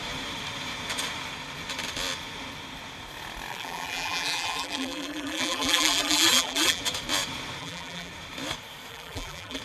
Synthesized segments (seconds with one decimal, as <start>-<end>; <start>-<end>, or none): 3.5-6.8; 7.6-8.1; 8.9-9.6